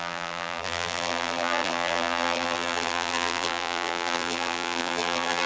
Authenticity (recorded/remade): remade